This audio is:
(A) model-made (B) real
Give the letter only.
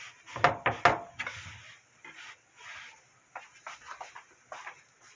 B